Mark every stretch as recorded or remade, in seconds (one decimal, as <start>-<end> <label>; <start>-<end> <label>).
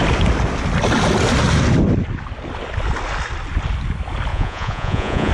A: 0.0-4.3 recorded; 4.3-5.3 remade